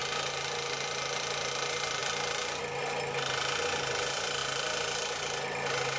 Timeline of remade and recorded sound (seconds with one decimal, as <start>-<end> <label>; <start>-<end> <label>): 0.0-6.0 recorded